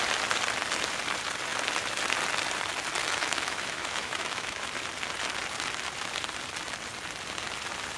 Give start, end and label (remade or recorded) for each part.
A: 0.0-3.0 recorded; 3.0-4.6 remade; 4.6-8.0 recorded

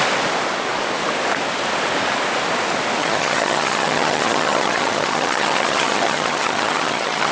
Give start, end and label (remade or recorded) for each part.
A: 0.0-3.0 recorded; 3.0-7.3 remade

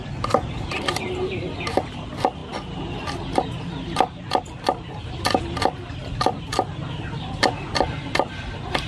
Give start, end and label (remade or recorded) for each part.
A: 0.0-8.9 recorded

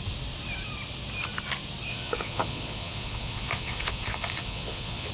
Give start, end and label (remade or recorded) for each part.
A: 0.0-1.9 recorded; 1.9-5.1 remade

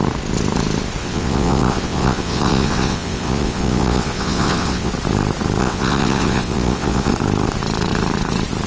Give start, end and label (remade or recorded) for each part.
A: 0.0-1.0 recorded; 1.0-4.9 remade; 4.9-5.6 recorded; 5.6-7.1 remade; 7.1-8.7 recorded